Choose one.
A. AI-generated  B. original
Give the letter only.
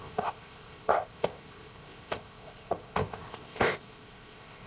A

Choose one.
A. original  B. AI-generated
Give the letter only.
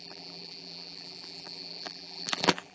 B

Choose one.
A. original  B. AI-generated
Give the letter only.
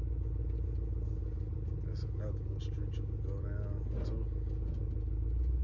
A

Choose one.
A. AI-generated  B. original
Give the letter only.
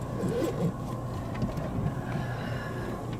B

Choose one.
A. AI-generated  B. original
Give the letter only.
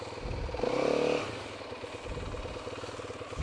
B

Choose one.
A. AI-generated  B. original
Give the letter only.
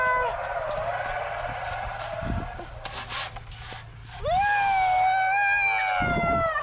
B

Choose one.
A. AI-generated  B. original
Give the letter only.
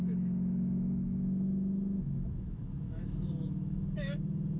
A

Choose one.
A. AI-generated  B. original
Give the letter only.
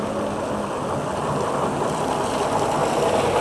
B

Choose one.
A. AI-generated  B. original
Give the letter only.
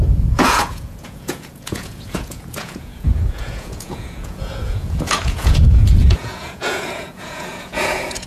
A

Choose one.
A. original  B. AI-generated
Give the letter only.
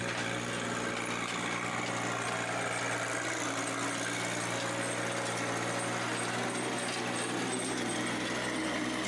A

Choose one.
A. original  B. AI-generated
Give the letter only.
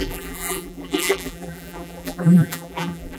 B